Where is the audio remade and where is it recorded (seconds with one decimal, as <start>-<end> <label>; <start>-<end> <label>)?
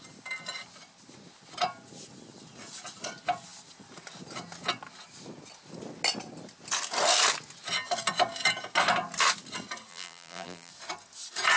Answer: 0.0-9.9 recorded; 9.9-10.7 remade; 10.7-11.6 recorded